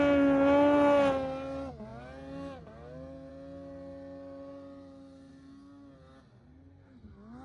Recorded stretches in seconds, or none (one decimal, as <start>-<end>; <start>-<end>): 0.0-7.4